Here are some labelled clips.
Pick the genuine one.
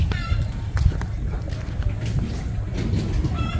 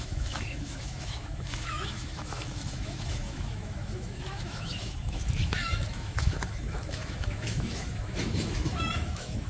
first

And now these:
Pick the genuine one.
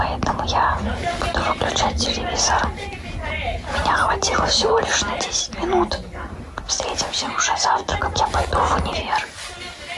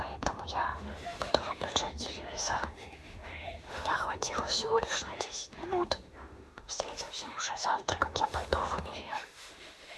first